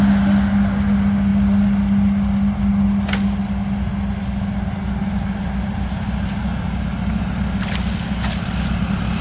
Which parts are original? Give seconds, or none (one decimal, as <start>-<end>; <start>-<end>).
0.0-9.2

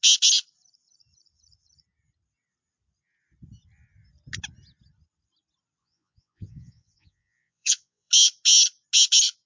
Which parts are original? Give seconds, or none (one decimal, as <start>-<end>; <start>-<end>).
0.0-5.8; 8.1-9.5